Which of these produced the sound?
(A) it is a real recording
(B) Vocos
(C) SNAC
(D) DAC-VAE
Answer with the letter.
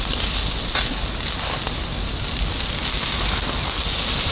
A